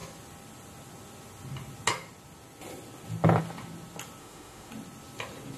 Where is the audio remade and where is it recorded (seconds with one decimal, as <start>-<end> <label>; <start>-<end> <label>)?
0.0-4.2 recorded; 4.2-4.7 remade; 4.7-5.6 recorded